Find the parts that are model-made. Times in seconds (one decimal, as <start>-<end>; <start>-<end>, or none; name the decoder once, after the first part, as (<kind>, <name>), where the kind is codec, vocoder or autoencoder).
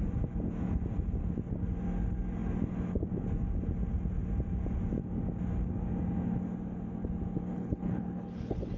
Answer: 7.5-8.8 (codec, HILCodec)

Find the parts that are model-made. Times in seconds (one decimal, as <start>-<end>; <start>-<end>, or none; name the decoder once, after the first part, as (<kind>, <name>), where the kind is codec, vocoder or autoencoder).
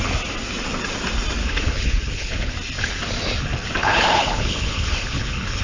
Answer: 1.4-2.5 (codec, HILCodec); 3.8-5.6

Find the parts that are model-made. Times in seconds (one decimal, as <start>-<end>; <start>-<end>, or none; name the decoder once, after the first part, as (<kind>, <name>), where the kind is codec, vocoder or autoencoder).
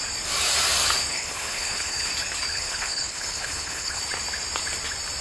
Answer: 1.1-2.1 (codec, HILCodec); 2.5-4.0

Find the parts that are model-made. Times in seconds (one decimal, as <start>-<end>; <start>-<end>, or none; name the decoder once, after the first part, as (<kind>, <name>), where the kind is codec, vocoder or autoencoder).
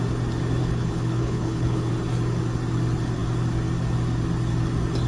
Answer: 0.6-1.9 (codec, HILCodec)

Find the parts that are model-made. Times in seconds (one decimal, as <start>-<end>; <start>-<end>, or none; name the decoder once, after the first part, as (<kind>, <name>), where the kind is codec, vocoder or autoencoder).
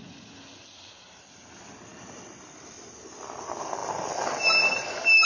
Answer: none